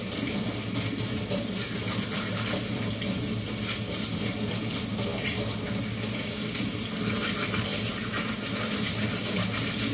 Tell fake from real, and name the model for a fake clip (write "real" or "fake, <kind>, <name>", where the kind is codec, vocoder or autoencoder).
real